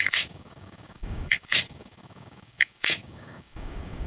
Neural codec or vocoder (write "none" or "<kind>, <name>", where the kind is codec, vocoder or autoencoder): codec, DAC